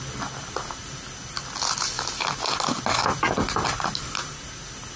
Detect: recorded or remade recorded